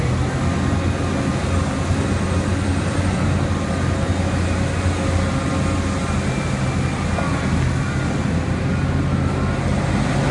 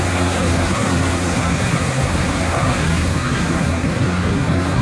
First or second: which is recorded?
first